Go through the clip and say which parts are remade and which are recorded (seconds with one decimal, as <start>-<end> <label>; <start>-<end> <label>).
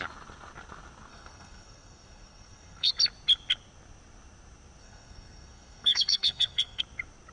0.0-1.1 recorded; 1.1-2.9 remade; 2.9-4.8 recorded; 4.8-6.8 remade; 6.8-7.3 recorded